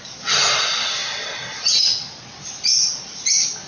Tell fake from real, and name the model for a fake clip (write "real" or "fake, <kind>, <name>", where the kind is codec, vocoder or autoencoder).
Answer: real